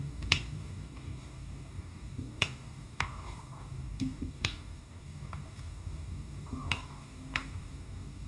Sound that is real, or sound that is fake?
fake